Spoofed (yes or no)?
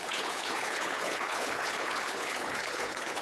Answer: yes